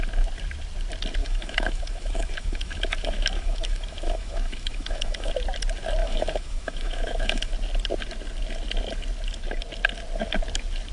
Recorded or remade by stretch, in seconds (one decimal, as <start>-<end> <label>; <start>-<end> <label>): 0.0-1.2 recorded; 1.2-5.3 remade; 5.3-6.0 recorded; 6.0-7.5 remade; 7.5-10.9 recorded